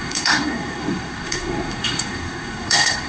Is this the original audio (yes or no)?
no